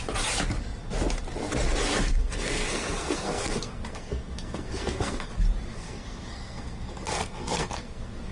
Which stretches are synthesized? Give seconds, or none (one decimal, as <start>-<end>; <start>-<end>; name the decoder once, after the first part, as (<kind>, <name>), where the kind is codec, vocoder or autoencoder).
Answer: 2.2-5.3 (codec, SNAC); 5.7-8.3